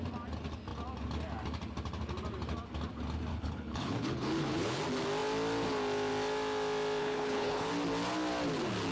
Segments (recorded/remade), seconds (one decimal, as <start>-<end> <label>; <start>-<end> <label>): 0.0-3.3 recorded; 3.3-4.8 remade; 4.8-7.0 recorded; 7.0-7.7 remade; 7.7-8.9 recorded